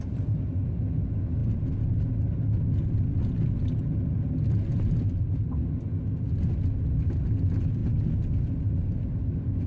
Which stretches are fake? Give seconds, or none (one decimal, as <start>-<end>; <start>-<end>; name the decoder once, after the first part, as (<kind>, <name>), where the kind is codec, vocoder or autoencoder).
none